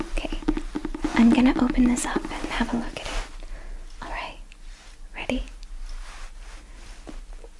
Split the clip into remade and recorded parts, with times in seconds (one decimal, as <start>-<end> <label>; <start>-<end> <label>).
0.0-7.6 recorded